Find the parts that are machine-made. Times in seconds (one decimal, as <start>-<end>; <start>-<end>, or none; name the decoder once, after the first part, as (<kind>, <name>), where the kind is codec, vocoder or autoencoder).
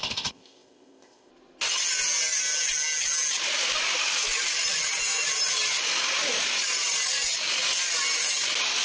0.0-1.3 (codec, ZipCodec)